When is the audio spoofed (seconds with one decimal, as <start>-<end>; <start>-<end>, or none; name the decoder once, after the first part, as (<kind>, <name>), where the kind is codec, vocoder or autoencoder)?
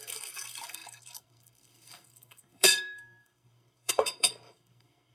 0.0-5.1 (codec, SNAC)